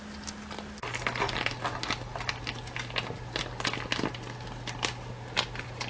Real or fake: real